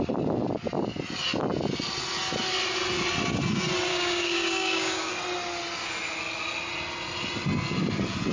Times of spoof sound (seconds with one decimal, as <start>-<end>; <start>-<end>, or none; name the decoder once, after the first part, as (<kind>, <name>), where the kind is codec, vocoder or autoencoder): 3.9-5.1 (codec, DAC)